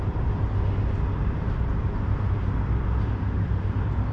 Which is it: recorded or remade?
recorded